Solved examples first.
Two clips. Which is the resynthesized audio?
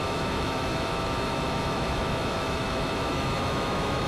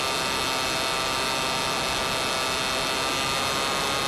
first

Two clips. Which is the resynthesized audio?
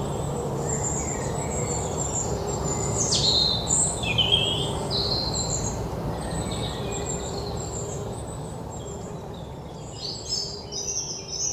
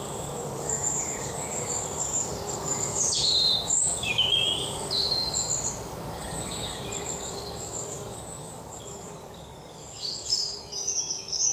second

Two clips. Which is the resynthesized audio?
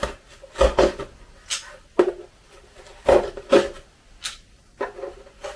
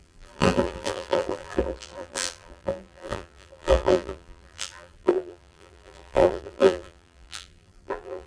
second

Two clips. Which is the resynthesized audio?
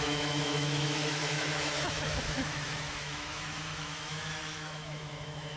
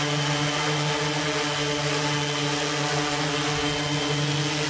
first